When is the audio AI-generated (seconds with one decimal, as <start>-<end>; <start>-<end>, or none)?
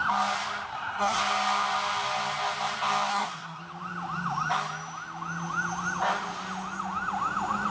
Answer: 0.7-1.2; 3.1-3.6